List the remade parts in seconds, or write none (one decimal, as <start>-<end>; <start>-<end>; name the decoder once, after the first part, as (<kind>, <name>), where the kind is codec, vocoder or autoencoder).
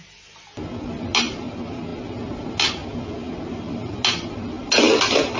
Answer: none